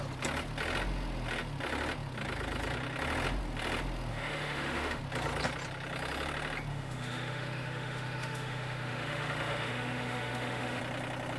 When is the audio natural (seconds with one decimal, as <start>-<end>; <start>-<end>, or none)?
0.0-4.1; 5.0-6.7; 10.8-11.4

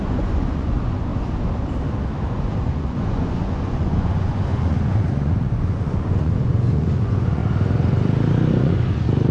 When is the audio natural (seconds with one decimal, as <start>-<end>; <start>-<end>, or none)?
1.1-2.3; 7.4-8.6

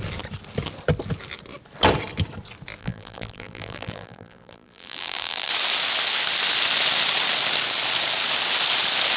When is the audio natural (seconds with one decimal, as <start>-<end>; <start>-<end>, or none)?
0.0-2.8; 5.5-9.2

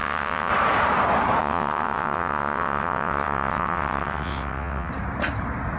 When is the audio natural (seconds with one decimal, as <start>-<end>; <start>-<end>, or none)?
0.5-1.4; 4.9-5.8

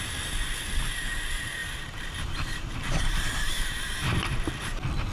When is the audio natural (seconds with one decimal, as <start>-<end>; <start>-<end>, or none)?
0.0-1.6; 4.5-5.1

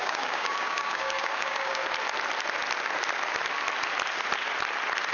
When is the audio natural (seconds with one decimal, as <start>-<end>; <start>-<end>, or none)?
1.8-5.1